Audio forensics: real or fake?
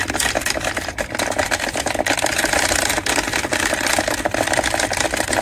real